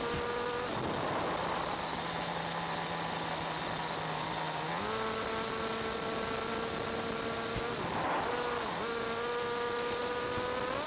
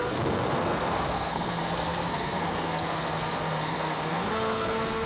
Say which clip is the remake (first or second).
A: second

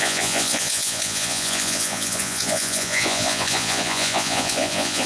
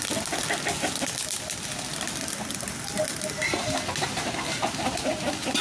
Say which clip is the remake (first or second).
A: first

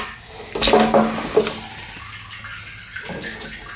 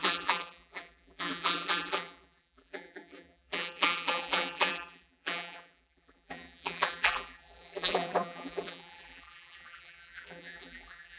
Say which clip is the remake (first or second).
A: second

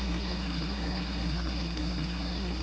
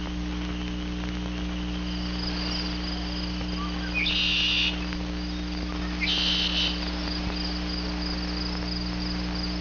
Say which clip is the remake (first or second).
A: first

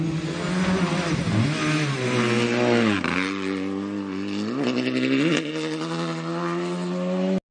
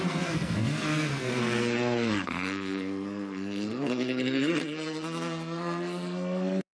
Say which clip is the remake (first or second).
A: second